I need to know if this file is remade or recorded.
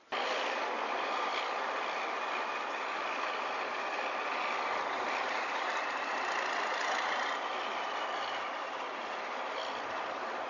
remade